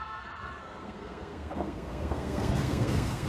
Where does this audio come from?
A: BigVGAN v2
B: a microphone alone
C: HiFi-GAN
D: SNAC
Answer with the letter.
D